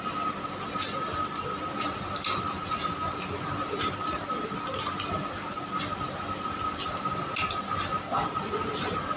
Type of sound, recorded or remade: recorded